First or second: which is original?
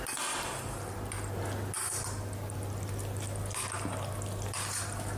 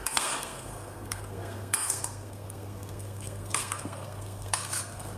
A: first